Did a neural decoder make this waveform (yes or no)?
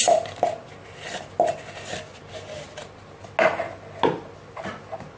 no